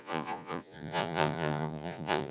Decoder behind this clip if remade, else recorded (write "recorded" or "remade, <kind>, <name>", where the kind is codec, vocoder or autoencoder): remade, vocoder, Vocos